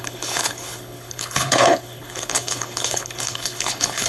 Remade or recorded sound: remade